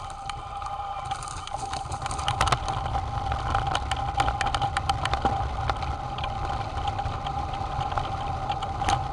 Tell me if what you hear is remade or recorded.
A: recorded